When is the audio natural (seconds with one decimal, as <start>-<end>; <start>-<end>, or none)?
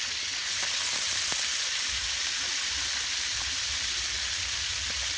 0.0-5.2